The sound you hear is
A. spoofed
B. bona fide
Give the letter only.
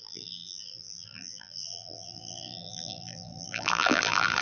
A